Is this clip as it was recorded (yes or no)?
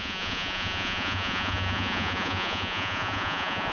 no